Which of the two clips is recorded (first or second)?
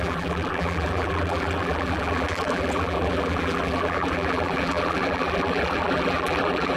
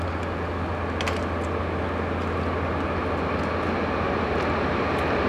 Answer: second